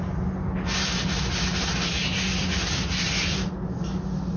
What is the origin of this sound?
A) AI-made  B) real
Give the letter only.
B